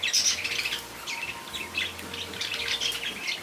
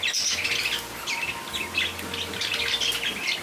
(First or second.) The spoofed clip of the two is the first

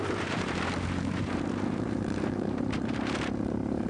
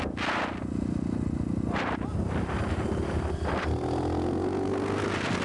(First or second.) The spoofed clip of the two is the first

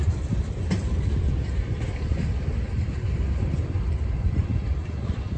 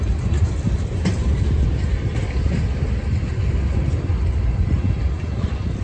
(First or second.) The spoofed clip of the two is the first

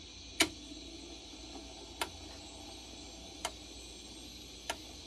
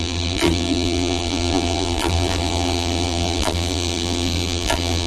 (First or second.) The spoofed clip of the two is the second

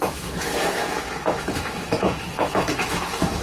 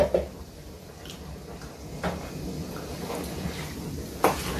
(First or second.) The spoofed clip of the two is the first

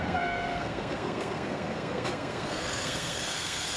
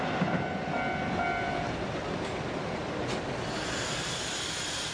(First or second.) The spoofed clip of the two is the first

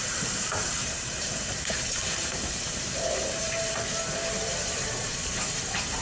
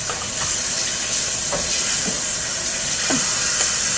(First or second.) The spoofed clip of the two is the first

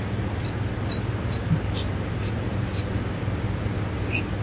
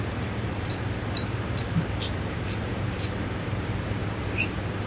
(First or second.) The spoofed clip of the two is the second